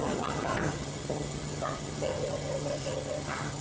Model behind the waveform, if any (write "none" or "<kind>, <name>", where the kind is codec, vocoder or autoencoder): vocoder, HiFi-GAN